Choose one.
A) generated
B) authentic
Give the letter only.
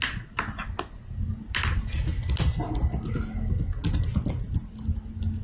B